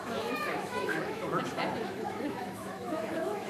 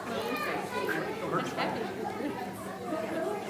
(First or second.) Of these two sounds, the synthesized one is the first